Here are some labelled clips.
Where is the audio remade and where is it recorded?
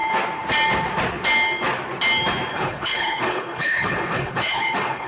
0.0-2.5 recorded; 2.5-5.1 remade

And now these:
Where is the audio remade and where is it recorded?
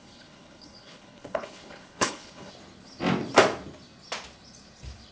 0.0-2.5 remade; 2.5-5.1 recorded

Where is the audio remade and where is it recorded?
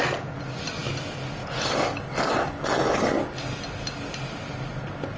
0.0-5.2 recorded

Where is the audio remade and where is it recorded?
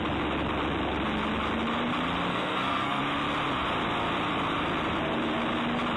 0.0-2.3 recorded; 2.3-3.0 remade; 3.0-6.0 recorded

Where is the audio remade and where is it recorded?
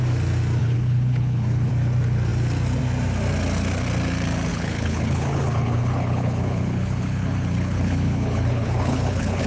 0.0-0.6 recorded; 0.6-1.7 remade; 1.7-4.5 recorded; 4.5-9.5 remade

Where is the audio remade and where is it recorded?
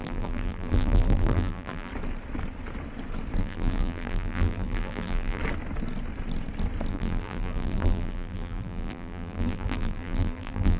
0.0-1.9 remade; 1.9-3.4 recorded; 3.4-5.4 remade; 5.4-6.9 recorded; 6.9-10.8 remade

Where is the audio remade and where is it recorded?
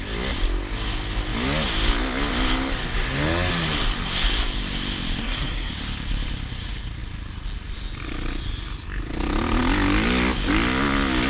0.0-5.2 recorded; 5.2-5.7 remade; 5.7-11.3 recorded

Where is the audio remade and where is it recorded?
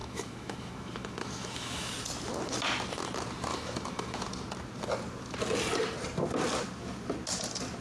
0.0-1.9 remade; 1.9-3.5 recorded; 3.5-4.2 remade; 4.2-7.8 recorded